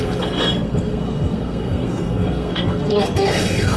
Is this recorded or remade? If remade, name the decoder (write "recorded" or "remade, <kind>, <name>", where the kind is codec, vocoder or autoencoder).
remade, codec, SNAC